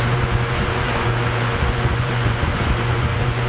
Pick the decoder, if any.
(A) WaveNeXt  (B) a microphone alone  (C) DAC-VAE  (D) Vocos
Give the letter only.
D